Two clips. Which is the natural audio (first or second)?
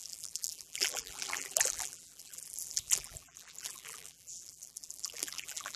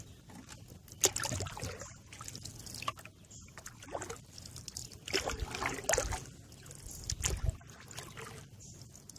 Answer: second